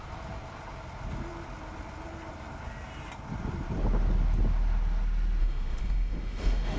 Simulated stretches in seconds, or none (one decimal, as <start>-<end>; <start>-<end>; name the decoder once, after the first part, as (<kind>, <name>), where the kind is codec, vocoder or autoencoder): 5.4-6.8 (autoencoder, DAC-VAE)